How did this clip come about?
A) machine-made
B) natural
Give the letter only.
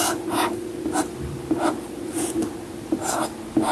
B